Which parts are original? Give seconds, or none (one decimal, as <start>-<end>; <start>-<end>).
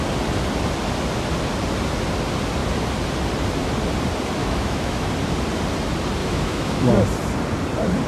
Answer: 0.0-4.4; 5.1-6.2; 6.9-8.1